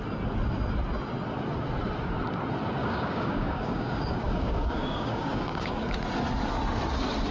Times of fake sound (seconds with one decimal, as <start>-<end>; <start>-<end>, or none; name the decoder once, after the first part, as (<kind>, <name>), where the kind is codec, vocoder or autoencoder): 2.8-6.0 (codec, DAC)